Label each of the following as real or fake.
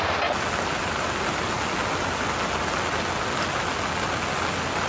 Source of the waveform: real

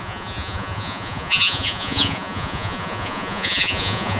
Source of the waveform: fake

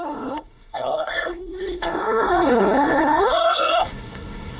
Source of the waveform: fake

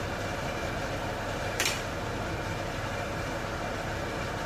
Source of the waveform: real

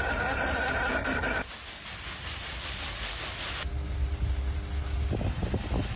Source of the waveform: real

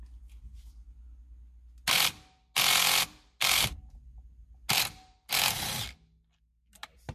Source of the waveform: real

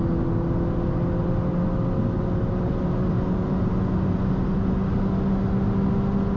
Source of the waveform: real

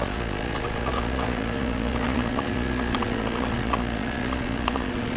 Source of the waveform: fake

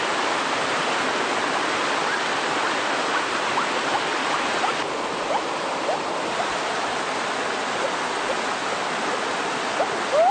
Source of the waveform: real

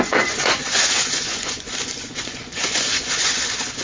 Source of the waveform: fake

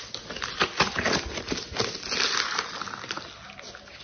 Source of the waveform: real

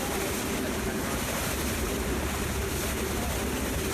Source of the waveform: real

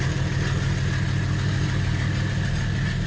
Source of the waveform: real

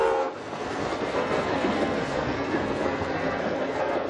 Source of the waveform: fake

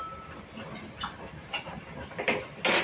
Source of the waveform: real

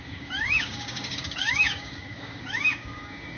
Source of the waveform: fake